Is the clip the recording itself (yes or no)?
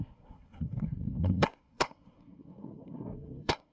no